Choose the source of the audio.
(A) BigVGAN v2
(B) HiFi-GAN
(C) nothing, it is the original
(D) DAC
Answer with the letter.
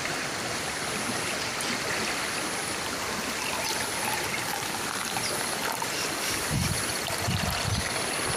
C